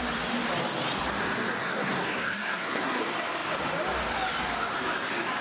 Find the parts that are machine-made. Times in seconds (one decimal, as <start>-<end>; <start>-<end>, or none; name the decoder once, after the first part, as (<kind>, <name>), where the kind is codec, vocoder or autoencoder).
1.6-3.0 (codec, SNAC)